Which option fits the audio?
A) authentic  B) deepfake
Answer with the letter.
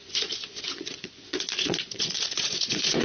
B